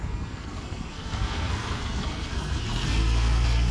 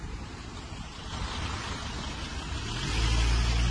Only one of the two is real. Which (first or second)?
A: second